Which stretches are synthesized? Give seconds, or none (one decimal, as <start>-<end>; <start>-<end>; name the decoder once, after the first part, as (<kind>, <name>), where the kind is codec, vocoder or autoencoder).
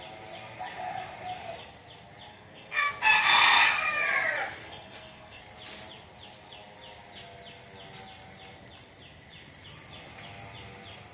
2.3-2.9 (codec, SNAC); 4.6-5.4